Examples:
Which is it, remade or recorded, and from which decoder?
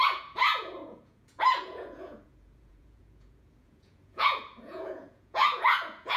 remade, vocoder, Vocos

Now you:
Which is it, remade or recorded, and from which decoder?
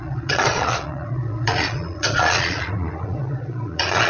remade, vocoder, Vocos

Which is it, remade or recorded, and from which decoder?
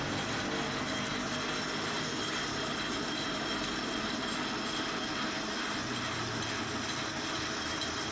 recorded